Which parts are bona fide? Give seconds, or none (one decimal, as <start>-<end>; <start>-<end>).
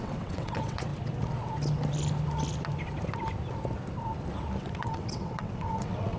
0.9-4.6